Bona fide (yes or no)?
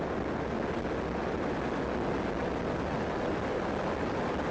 yes